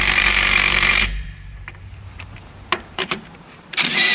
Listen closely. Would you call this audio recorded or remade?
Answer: remade